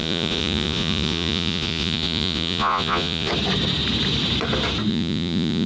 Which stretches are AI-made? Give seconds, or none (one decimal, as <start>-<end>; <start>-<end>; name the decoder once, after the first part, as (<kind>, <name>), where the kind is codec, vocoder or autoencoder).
0.0-3.3 (vocoder, Vocos); 4.9-5.7